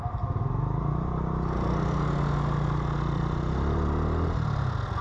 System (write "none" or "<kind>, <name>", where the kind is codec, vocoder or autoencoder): none